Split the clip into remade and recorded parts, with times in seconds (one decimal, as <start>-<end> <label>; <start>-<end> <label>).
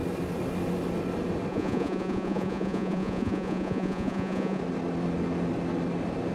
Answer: 0.0-1.5 recorded; 1.5-4.6 remade; 4.6-6.3 recorded